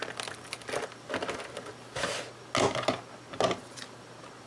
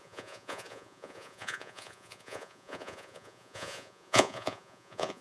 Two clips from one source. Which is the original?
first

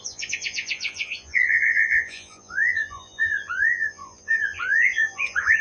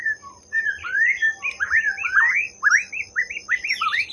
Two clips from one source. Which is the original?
second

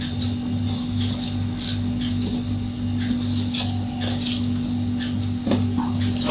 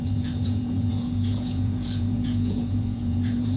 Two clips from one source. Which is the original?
first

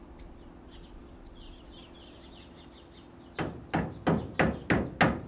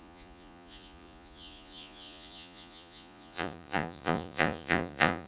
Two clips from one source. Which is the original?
first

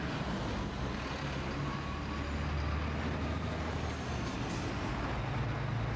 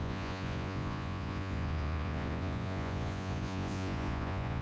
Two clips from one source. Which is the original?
first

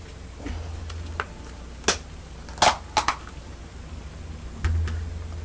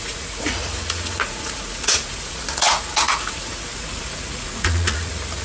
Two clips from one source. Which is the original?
first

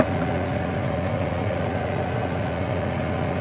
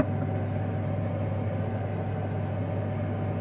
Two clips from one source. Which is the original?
second